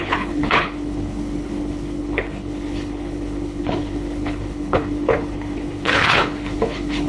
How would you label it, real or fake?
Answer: fake